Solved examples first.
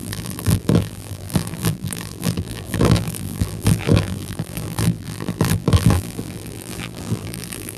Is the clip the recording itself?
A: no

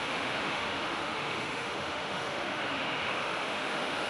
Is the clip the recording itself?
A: no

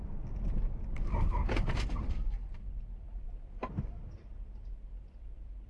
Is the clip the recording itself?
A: no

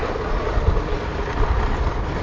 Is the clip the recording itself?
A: yes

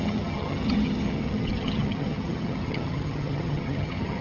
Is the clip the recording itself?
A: no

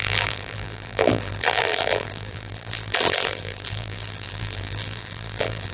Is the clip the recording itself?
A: no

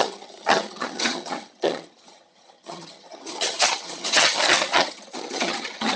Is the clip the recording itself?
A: no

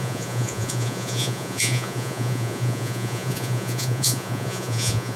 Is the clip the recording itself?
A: no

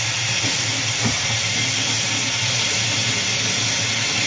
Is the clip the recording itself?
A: yes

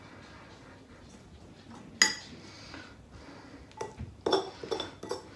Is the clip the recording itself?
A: yes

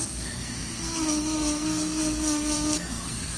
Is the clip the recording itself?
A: no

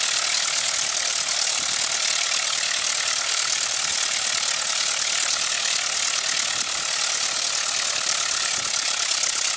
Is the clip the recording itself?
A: yes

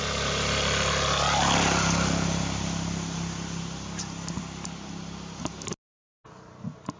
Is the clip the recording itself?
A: yes